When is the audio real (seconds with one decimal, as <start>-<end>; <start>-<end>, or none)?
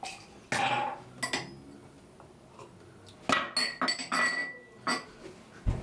0.0-5.8